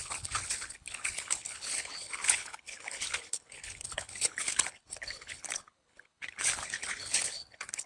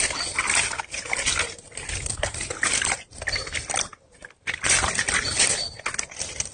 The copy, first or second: first